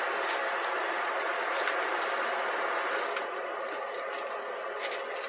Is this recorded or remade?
recorded